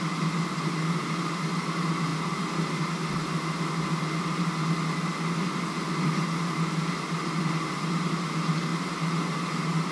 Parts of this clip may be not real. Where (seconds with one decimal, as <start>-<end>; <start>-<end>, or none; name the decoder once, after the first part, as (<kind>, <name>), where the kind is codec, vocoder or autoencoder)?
none